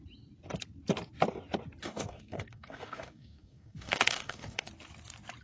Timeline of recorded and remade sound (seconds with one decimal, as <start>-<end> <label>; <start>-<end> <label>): 0.0-1.8 recorded; 1.8-4.7 remade; 4.7-5.4 recorded